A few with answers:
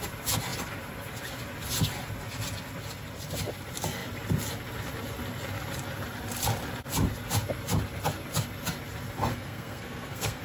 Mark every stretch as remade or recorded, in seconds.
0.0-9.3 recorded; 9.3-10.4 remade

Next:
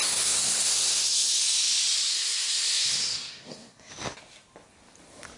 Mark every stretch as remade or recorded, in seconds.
0.0-1.4 remade; 1.4-2.1 recorded; 2.1-3.9 remade; 3.9-5.4 recorded

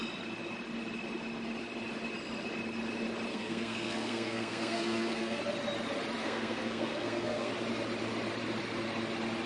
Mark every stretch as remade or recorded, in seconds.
0.0-3.3 recorded; 3.3-5.4 remade; 5.4-6.2 recorded; 6.2-7.5 remade; 7.5-9.5 recorded

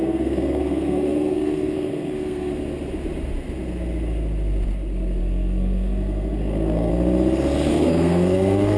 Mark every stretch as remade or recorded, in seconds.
0.0-2.5 remade; 2.5-5.2 recorded; 5.2-6.9 remade; 6.9-7.7 recorded; 7.7-8.8 remade

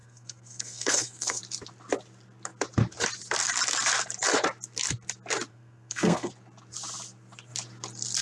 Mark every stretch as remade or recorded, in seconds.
0.0-1.4 remade; 1.4-5.5 recorded; 5.5-6.3 remade; 6.3-8.2 recorded

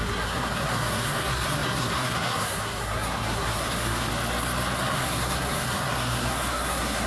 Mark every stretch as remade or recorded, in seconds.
0.0-4.1 remade; 4.1-4.8 recorded; 4.8-7.1 remade